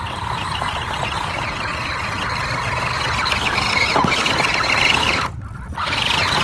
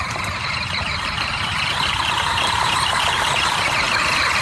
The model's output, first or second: second